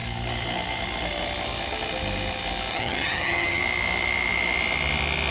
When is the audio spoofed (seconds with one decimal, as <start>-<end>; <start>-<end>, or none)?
2.7-3.6